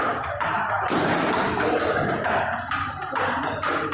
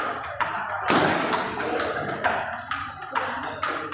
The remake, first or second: first